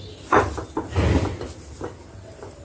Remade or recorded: recorded